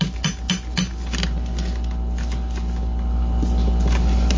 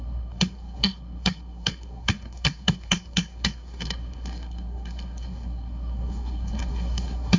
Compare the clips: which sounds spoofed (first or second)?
second